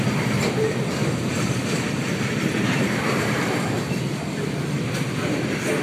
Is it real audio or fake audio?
fake